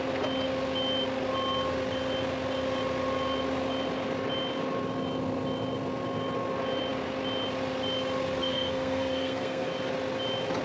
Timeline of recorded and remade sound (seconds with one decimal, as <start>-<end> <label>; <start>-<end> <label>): 0.0-8.4 recorded; 8.4-9.7 remade; 9.7-10.6 recorded